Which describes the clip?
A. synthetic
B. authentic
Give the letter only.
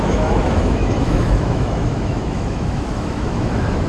A